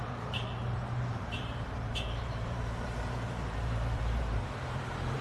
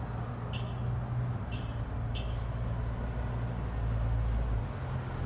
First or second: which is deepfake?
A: first